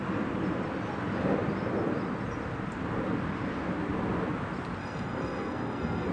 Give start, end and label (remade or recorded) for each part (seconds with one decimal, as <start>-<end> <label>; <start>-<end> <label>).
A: 0.0-4.8 recorded; 4.8-6.1 remade